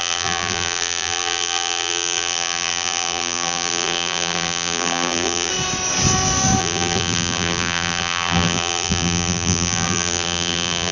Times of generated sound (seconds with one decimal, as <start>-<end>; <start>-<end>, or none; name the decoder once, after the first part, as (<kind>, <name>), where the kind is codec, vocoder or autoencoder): 0.0-5.5 (vocoder, BigVGAN v2); 6.6-10.9